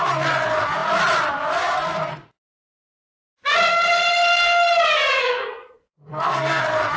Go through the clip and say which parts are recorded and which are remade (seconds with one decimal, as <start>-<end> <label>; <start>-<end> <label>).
0.0-5.2 recorded; 5.2-6.6 remade; 6.6-7.0 recorded